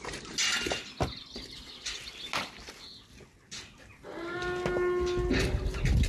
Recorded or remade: recorded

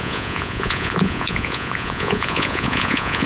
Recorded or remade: remade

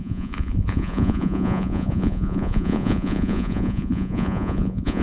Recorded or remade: remade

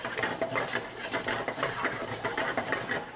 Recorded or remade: recorded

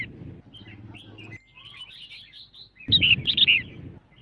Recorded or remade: recorded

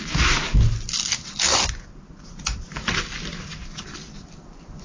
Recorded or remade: recorded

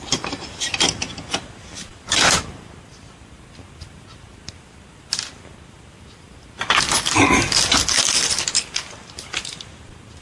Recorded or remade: recorded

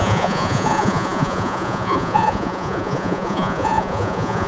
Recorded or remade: remade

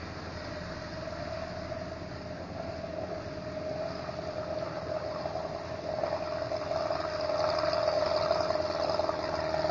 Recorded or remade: recorded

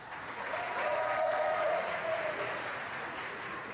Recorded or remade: remade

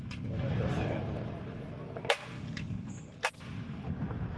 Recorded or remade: recorded